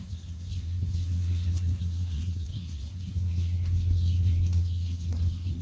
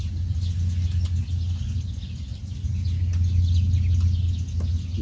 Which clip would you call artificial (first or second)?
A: first